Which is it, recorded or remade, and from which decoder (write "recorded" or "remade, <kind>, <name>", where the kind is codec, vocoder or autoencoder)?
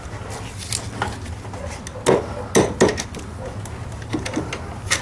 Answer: recorded